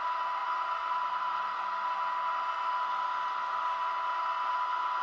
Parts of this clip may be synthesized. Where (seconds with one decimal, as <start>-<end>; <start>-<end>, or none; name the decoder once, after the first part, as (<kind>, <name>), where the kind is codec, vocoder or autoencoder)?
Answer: 0.4-1.4 (vocoder, BigVGAN v2)